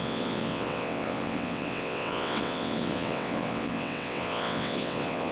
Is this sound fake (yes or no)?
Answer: yes